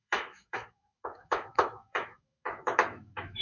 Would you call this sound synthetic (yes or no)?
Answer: yes